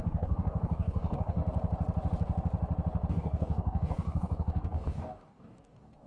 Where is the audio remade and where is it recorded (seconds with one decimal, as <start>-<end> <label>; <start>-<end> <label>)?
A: 0.0-1.4 remade; 1.4-3.1 recorded; 3.1-6.1 remade